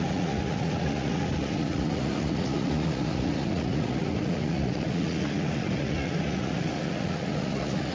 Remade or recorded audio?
remade